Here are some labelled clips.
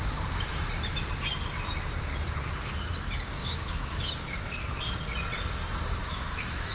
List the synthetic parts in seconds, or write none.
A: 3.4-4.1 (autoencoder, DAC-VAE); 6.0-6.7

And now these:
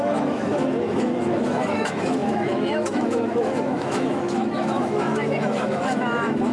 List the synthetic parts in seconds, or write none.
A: 0.0-6.5 (autoencoder, DAC-VAE)

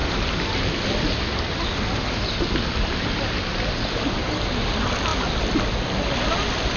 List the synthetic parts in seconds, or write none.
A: none

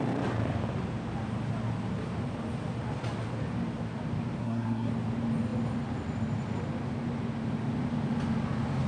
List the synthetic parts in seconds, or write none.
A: 4.4-4.9 (codec, SNAC)

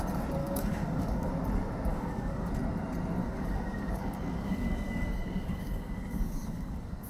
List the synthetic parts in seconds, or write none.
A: 0.4-1.3 (codec, DAC); 1.9-2.5; 3.2-7.1

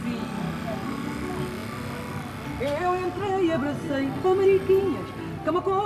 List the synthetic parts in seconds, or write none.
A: none

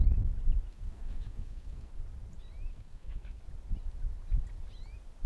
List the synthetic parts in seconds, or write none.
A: 0.7-1.9 (codec, SNAC); 2.7-3.4